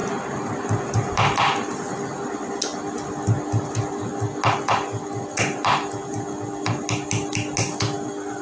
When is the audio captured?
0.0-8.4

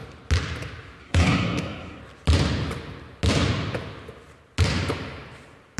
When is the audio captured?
0.0-1.0; 2.0-5.8

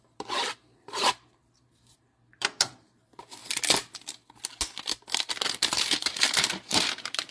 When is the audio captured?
3.4-5.5

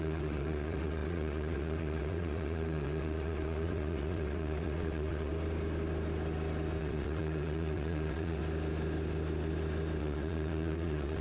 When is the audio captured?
5.3-6.8; 8.4-10.0

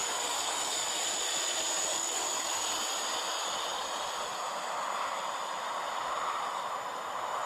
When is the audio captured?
0.9-1.9; 2.5-7.5

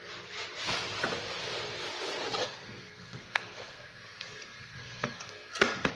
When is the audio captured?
0.0-2.4

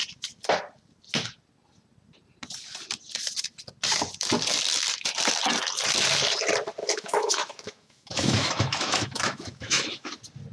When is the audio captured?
0.0-6.8; 10.1-10.5